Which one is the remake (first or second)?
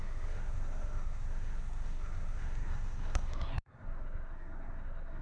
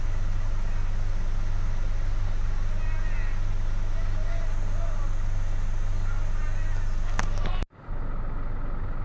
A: first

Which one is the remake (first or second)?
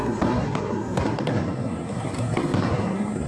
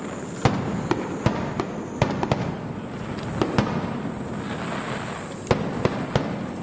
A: first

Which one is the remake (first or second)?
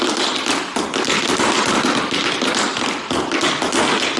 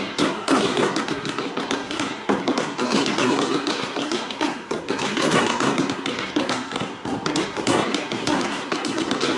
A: second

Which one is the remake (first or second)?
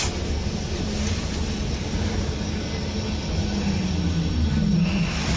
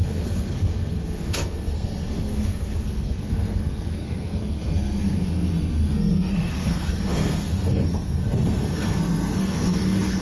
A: second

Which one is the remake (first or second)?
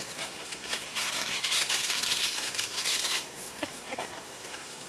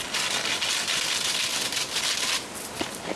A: first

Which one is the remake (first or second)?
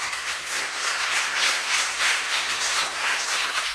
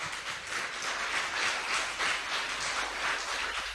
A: first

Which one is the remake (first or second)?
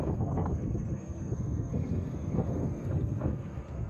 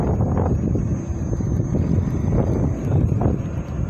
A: first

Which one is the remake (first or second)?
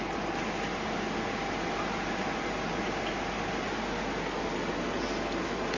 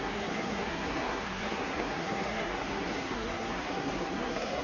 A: second